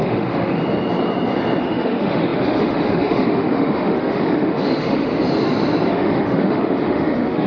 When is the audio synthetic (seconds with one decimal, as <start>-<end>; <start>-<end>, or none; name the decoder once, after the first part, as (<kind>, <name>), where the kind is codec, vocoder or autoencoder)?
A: 0.0-0.6 (autoencoder, DAC-VAE); 1.6-5.1; 5.9-7.5